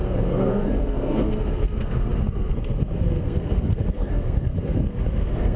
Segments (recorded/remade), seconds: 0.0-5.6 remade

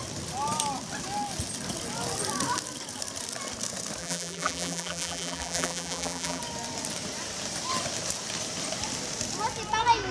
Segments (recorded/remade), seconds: 0.0-4.0 recorded; 4.0-6.4 remade; 6.4-10.1 recorded

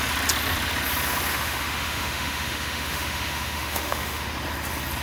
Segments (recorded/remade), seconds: 0.0-1.3 recorded; 1.3-4.3 remade; 4.3-5.0 recorded

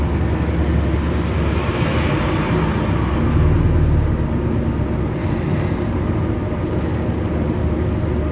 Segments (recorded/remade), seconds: 0.0-8.3 recorded

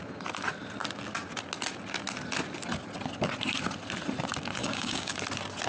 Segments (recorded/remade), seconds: 0.0-4.6 recorded; 4.6-5.1 remade; 5.1-5.7 recorded

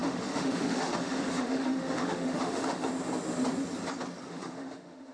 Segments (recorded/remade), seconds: 0.0-2.9 remade; 2.9-4.3 recorded; 4.3-5.1 remade

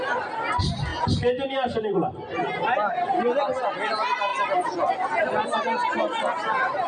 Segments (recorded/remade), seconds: 0.0-6.9 recorded